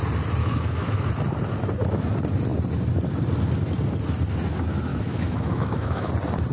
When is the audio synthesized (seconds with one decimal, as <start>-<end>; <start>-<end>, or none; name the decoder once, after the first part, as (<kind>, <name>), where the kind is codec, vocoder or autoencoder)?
0.4-1.1 (autoencoder, DAC-VAE); 4.9-6.1